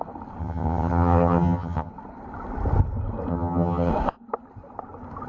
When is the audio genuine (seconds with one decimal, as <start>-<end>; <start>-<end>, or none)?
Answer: 0.0-0.4; 1.9-3.3; 3.9-5.3